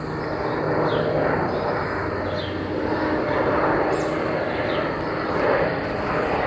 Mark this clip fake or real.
real